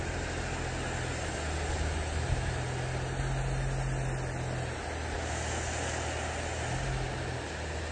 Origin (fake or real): real